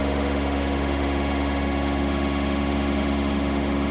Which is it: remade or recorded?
remade